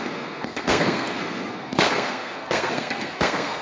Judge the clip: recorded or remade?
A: remade